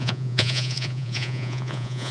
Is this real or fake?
fake